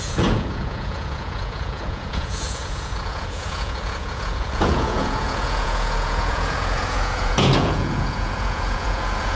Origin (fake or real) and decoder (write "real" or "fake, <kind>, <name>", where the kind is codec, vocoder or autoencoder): fake, vocoder, Vocos